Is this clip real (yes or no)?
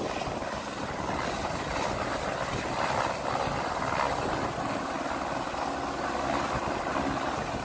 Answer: yes